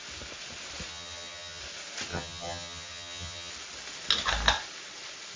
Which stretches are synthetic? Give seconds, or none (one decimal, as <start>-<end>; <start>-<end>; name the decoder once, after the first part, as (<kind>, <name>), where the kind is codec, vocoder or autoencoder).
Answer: 0.9-1.6 (vocoder, HiFi-GAN); 2.1-3.5